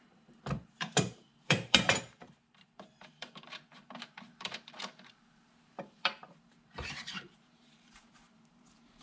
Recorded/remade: remade